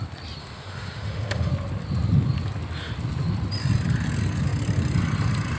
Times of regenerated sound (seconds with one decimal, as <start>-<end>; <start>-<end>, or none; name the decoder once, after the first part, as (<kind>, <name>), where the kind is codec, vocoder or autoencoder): 0.4-1.5 (autoencoder, DAC-VAE)